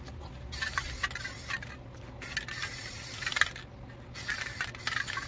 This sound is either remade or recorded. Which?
recorded